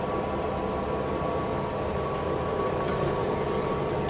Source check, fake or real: real